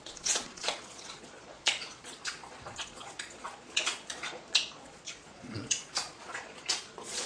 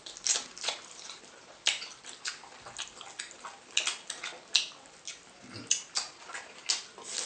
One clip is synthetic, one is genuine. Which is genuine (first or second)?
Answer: second